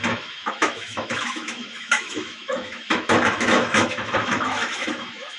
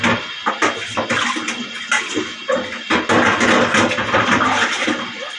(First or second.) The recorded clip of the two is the second